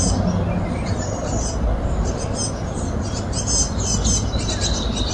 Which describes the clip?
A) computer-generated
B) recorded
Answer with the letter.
A